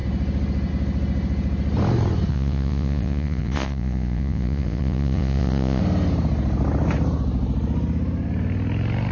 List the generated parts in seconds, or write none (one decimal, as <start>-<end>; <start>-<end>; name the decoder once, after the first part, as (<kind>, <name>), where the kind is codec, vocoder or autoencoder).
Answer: 2.3-5.8 (vocoder, Vocos)